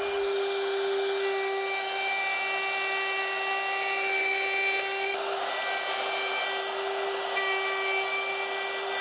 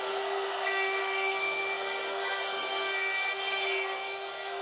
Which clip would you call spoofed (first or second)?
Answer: second